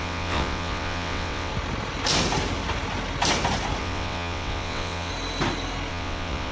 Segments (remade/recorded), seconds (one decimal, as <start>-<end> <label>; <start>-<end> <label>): 0.0-1.5 remade; 1.5-3.8 recorded; 3.8-5.1 remade; 5.1-5.9 recorded; 5.9-6.5 remade